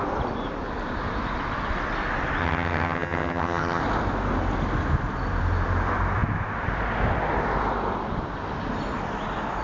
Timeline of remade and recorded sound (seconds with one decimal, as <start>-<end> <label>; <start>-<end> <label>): 0.0-2.4 recorded; 2.4-3.8 remade; 3.8-9.6 recorded